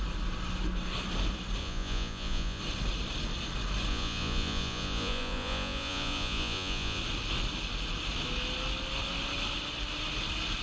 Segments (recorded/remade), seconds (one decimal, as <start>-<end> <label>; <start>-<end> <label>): 0.0-1.6 recorded; 1.6-2.6 remade; 2.6-3.9 recorded; 3.9-7.0 remade; 7.0-10.6 recorded